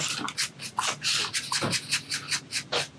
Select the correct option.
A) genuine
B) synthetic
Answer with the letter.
A